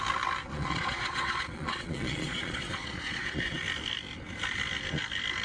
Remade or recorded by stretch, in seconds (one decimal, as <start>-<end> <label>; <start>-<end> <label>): 0.0-0.4 recorded; 0.4-3.6 remade; 3.6-5.4 recorded